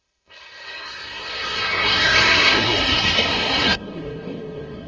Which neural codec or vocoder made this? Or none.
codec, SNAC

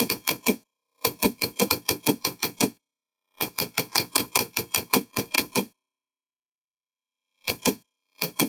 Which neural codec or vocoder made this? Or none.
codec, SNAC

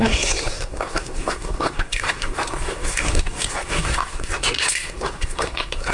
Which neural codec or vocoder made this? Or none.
codec, SNAC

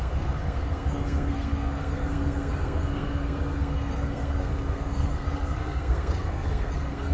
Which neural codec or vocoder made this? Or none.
codec, SNAC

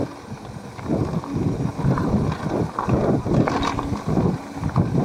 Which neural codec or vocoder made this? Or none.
none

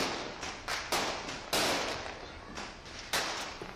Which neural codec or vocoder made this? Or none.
none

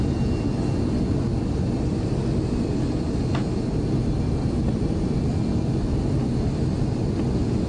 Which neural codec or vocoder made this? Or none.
none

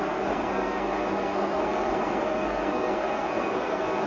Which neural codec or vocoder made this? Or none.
codec, SNAC